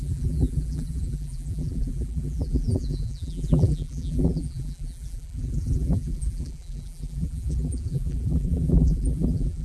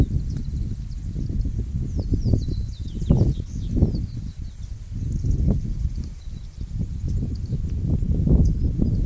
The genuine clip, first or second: second